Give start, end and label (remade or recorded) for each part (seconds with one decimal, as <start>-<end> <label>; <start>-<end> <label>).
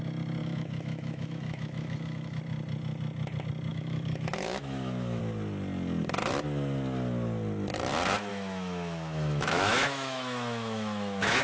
0.0-0.4 recorded; 0.4-2.4 remade; 2.4-3.7 recorded; 3.7-5.2 remade; 5.2-8.3 recorded; 8.3-11.4 remade